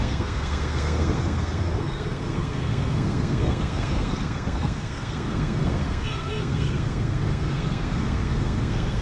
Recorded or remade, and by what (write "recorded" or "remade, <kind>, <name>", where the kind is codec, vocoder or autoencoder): remade, codec, SNAC